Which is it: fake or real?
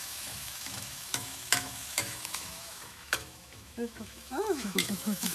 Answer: fake